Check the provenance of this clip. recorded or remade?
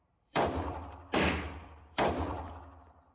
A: remade